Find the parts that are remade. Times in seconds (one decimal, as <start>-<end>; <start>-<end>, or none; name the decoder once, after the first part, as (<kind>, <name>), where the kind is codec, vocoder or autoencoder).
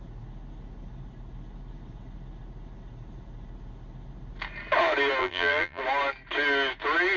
5.2-5.8 (vocoder, BigVGAN v2)